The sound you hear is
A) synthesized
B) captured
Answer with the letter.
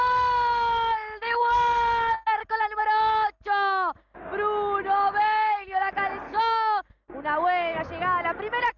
B